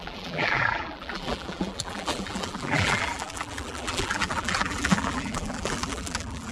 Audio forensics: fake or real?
fake